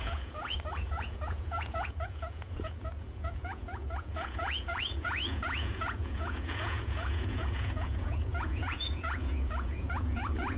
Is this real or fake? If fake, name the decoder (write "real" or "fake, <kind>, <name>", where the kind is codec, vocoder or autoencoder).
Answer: fake, vocoder, Vocos